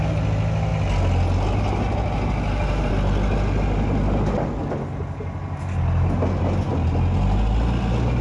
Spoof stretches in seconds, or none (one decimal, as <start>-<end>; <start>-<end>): none